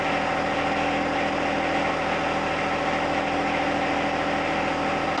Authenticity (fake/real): real